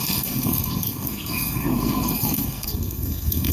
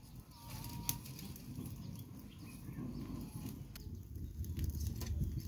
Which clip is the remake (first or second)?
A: first